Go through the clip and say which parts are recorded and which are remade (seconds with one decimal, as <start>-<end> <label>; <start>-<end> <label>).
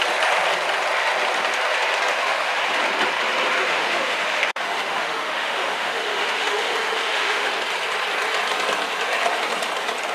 0.0-2.1 recorded; 2.1-2.6 remade; 2.6-3.6 recorded; 3.6-7.5 remade; 7.5-10.1 recorded